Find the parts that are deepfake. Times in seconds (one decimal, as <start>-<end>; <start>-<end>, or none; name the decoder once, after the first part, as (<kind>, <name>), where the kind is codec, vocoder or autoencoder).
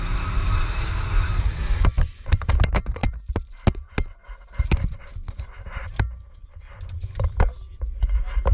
none